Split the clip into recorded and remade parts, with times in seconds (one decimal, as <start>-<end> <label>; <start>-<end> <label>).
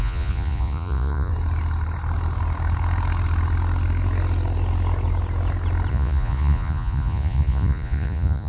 0.0-1.3 remade; 1.3-5.9 recorded; 5.9-8.5 remade